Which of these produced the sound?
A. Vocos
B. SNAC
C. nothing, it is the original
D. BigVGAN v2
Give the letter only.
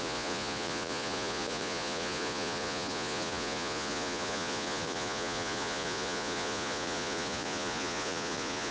A